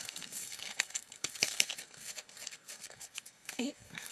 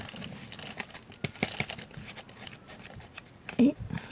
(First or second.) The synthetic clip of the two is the first